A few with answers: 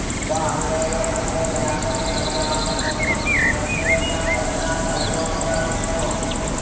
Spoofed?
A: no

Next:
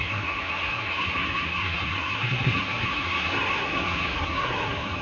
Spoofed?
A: yes